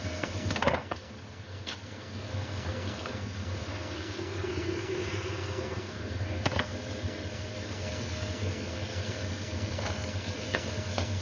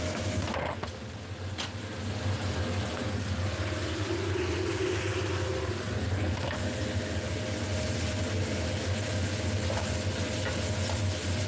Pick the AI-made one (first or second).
first